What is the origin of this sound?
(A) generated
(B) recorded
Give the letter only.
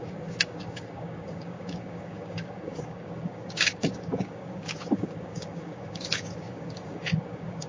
A